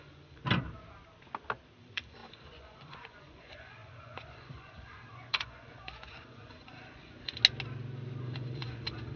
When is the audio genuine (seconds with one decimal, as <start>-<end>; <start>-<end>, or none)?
0.4-1.8; 7.4-8.2